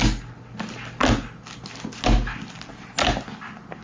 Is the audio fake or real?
real